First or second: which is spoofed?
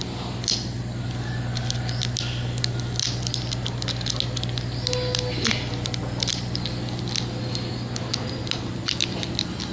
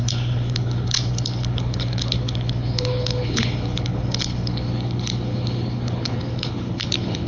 second